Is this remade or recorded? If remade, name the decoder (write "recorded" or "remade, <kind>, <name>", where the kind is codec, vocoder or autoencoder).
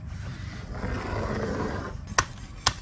recorded